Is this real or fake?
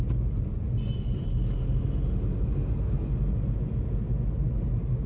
real